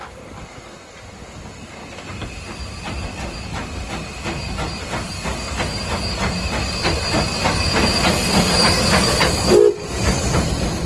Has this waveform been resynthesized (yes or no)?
no